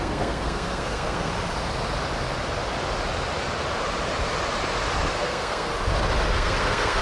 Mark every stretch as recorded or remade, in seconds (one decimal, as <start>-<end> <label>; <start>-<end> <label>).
0.0-1.3 remade; 1.3-5.1 recorded; 5.1-5.7 remade; 5.7-6.3 recorded; 6.3-7.0 remade